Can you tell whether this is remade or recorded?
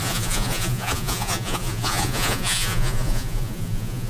remade